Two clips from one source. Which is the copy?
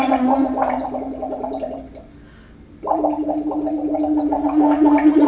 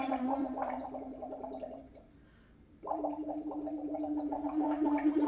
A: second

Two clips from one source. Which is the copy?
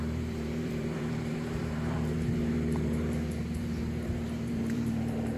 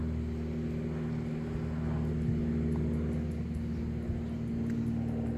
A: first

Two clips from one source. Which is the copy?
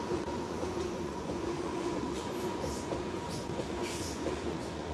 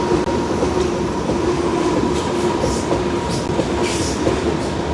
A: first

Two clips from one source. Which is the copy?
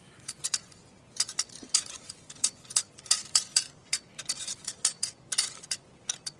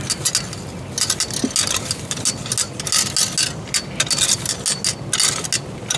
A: first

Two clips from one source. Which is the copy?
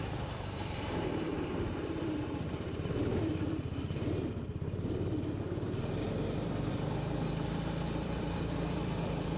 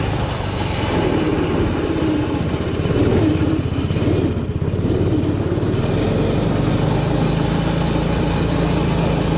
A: first